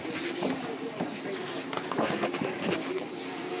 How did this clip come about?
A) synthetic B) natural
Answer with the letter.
B